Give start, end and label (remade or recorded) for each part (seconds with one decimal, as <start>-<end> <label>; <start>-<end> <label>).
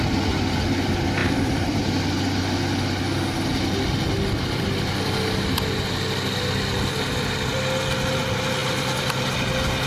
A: 0.0-1.2 recorded; 1.2-1.8 remade; 1.8-8.6 recorded; 8.6-9.4 remade; 9.4-9.9 recorded